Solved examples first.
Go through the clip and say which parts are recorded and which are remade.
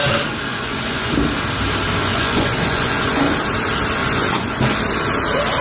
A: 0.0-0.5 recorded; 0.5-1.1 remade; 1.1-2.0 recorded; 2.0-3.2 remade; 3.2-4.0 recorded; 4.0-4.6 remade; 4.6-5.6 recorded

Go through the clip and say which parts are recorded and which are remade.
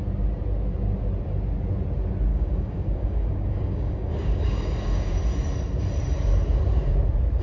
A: 0.0-2.3 recorded; 2.3-5.2 remade; 5.2-7.4 recorded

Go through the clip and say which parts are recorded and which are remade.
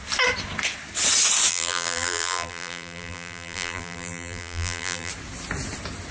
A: 0.0-1.5 recorded; 1.5-5.1 remade; 5.1-6.1 recorded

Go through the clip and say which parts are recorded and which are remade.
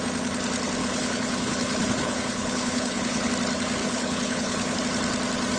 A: 0.0-0.8 recorded; 0.8-3.3 remade; 3.3-3.8 recorded; 3.8-4.8 remade; 4.8-5.6 recorded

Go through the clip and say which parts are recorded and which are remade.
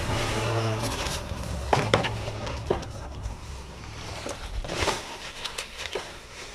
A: 0.0-3.8 remade; 3.8-4.8 recorded; 4.8-6.5 remade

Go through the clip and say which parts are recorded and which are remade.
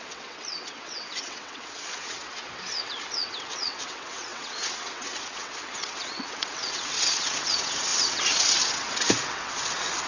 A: 0.0-10.1 remade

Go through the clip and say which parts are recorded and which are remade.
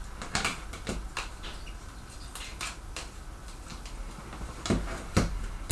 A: 0.0-5.7 recorded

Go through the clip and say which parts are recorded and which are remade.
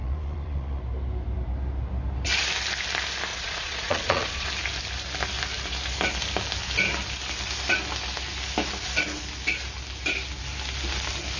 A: 0.0-0.8 remade; 0.8-3.3 recorded; 3.3-4.5 remade; 4.5-11.4 recorded